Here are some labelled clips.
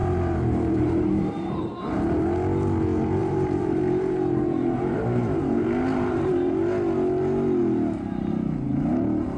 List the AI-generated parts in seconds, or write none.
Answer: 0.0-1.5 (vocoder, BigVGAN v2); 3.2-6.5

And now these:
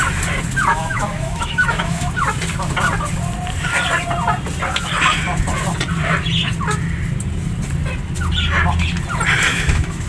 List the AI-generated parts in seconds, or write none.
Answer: 0.7-2.1 (autoencoder, DAC-VAE); 9.5-10.1

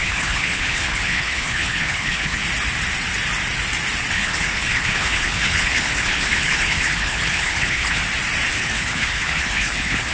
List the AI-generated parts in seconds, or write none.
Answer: 0.0-2.4 (codec, HILCodec); 4.1-8.0; 8.5-10.1

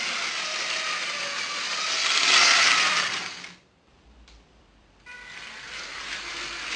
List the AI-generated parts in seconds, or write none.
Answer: 3.9-6.3 (vocoder, BigVGAN v2)

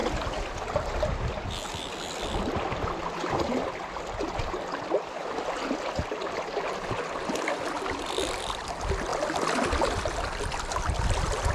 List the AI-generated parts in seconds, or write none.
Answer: none

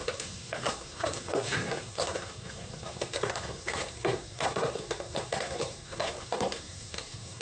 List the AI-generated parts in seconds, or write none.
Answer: 0.0-7.4 (codec, SNAC)

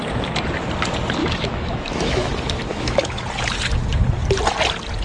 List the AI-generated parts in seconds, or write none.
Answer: 1.2-2.3 (autoencoder, DAC-VAE); 2.7-3.2